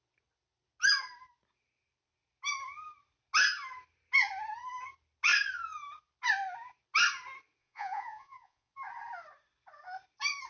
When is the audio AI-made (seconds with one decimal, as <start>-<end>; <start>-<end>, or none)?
7.6-8.7